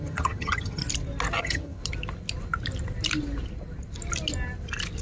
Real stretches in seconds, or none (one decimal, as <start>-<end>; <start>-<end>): 0.8-1.4; 1.8-5.0